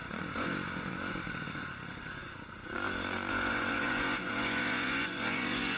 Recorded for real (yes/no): no